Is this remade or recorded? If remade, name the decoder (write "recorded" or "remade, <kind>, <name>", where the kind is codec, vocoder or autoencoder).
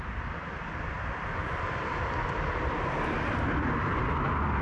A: recorded